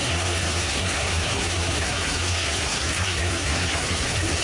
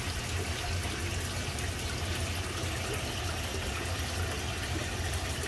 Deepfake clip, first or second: first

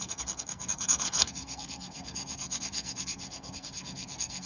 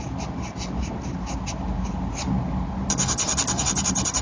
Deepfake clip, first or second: first